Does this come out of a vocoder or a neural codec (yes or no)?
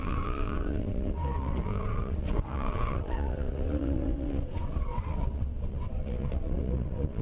yes